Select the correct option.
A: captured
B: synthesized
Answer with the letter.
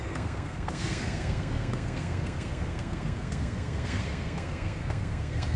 B